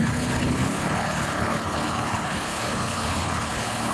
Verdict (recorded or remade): remade